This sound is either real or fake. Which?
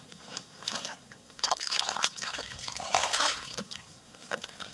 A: fake